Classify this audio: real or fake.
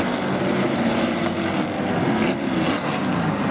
real